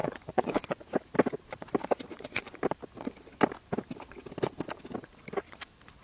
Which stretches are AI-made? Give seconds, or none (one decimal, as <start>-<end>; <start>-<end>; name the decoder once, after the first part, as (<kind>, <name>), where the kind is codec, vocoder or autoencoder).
0.0-0.8 (vocoder, Vocos); 2.1-2.6